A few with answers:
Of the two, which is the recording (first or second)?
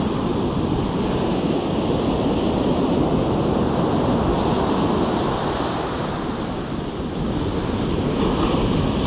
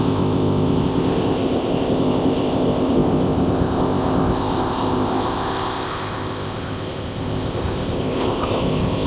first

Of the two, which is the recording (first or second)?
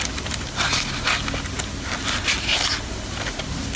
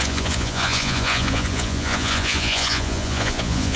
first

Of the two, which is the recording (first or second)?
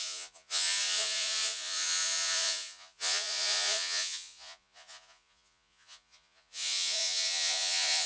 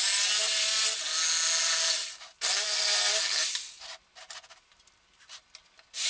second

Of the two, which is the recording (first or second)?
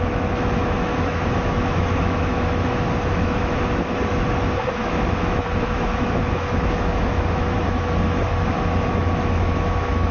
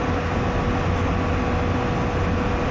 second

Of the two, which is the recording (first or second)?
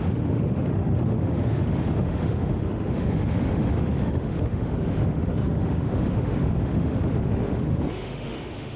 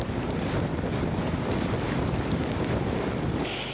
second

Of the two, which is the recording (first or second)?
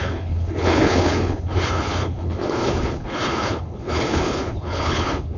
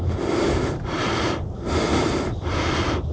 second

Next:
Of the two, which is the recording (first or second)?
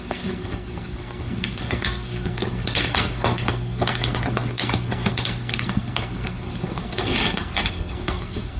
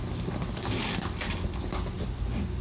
second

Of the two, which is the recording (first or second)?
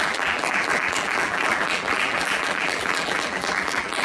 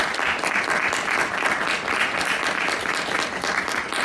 second